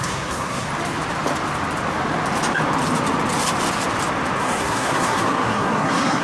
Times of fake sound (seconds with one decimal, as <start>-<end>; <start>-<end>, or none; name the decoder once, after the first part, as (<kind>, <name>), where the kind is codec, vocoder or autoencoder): 0.0-0.7 (codec, SNAC); 4.4-6.2

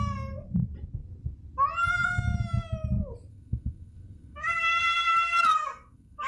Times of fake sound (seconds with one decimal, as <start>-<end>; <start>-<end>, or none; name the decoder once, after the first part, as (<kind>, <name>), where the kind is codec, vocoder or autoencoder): 3.3-6.3 (codec, SNAC)

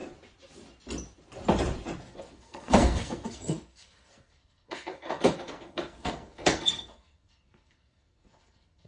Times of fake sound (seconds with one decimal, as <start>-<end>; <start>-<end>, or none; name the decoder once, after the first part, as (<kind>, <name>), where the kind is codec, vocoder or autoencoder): 2.0-8.9 (codec, SNAC)

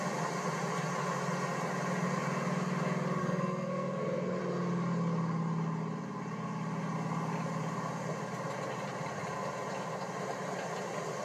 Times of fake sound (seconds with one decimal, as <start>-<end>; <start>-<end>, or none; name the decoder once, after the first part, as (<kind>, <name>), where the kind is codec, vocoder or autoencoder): 3.2-4.4 (codec, SNAC)

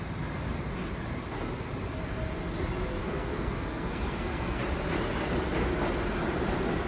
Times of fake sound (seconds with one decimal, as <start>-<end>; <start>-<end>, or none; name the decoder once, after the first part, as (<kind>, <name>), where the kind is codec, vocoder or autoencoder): 3.0-4.6 (codec, SNAC)